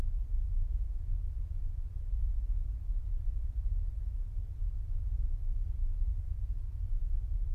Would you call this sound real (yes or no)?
yes